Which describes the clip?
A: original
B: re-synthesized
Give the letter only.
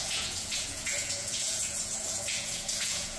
B